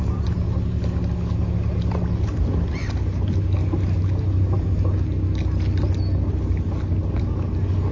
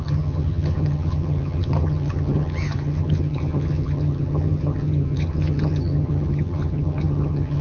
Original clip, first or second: first